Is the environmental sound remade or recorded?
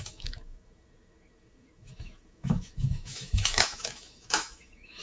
remade